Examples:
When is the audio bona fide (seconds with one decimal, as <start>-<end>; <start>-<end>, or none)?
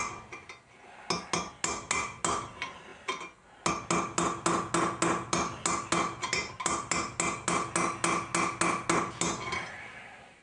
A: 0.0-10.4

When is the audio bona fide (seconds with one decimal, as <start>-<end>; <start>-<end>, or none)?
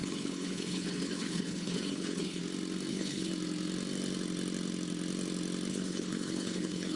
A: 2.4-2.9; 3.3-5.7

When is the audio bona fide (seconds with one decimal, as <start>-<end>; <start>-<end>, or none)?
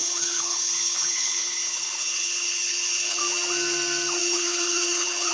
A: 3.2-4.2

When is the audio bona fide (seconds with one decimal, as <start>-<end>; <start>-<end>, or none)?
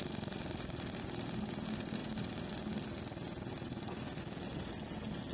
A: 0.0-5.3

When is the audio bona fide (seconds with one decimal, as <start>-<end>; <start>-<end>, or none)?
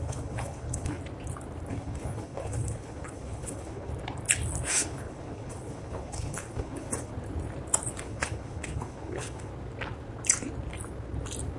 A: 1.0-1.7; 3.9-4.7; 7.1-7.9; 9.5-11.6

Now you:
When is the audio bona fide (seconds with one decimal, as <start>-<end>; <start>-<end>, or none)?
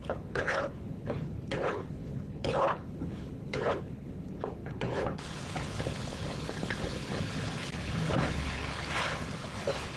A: none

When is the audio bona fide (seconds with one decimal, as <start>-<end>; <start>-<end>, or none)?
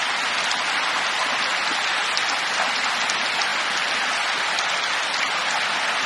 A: 0.0-6.1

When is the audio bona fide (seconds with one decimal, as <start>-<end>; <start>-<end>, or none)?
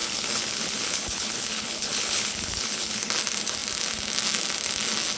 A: 3.1-5.2